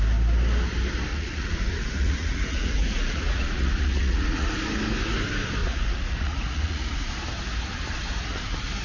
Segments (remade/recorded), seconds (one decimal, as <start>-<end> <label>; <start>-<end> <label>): 0.0-1.1 recorded; 1.1-4.5 remade; 4.5-5.6 recorded; 5.6-7.1 remade; 7.1-8.8 recorded